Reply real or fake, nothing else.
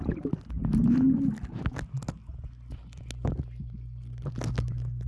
real